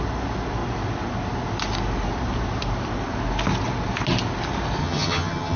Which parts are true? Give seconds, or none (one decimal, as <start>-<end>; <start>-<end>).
0.0-4.8